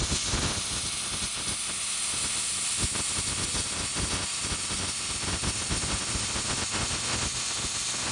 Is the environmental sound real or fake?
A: real